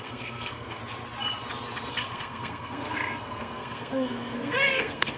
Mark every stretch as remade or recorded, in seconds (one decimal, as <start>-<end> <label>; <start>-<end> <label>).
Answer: 0.0-0.8 remade; 0.8-1.9 recorded; 1.9-5.2 remade